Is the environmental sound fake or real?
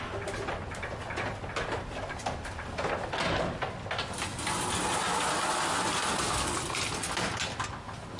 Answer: real